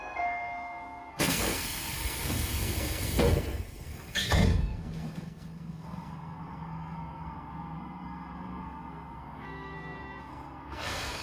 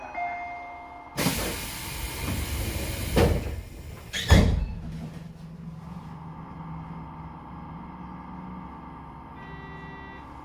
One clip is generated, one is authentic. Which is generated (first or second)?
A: first